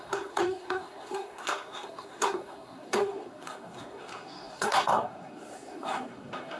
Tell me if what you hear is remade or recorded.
remade